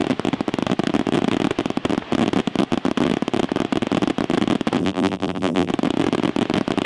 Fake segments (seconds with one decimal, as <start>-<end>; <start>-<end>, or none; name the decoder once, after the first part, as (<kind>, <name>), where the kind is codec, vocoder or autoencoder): 4.8-5.7 (vocoder, BigVGAN v2)